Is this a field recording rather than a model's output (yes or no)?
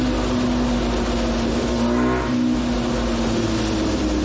yes